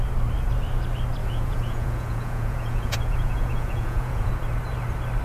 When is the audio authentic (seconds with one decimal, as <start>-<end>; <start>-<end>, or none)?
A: 0.0-1.2; 4.3-5.2